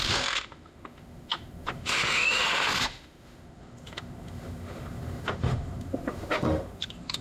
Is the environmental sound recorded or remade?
remade